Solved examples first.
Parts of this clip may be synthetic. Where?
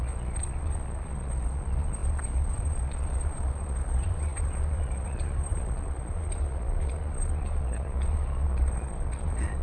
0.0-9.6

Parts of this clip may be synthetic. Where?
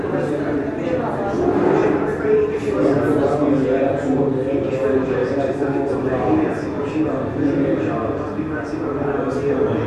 1.8-2.7; 5.2-6.0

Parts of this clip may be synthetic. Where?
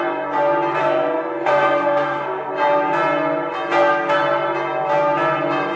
0.8-2.5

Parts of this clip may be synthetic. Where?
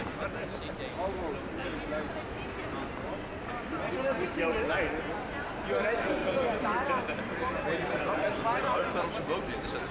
none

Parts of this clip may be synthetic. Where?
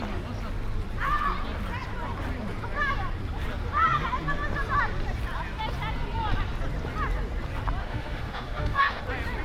7.8-9.0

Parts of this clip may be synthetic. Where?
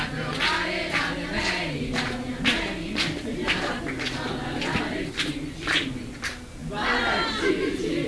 none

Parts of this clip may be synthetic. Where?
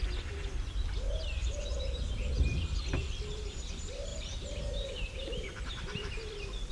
1.4-2.3; 4.1-6.1